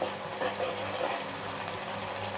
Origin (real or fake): real